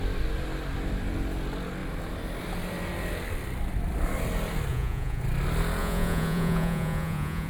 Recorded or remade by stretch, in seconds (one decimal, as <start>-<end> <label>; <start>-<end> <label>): 0.0-4.7 recorded; 4.7-5.2 remade; 5.2-5.8 recorded; 5.8-7.5 remade